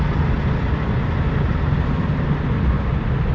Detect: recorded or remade recorded